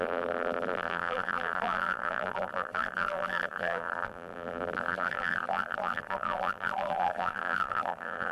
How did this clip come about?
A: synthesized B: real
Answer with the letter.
A